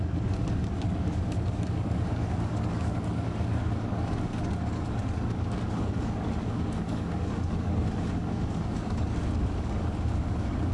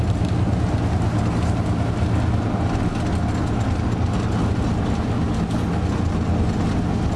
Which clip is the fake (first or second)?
first